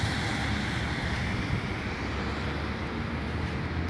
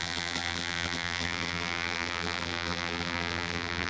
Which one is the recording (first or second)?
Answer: first